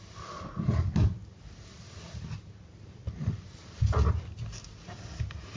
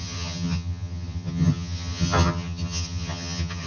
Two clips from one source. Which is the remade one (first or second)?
second